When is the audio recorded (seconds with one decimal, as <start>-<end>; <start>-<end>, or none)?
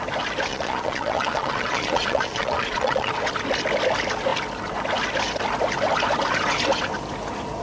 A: 0.0-0.5; 3.1-7.6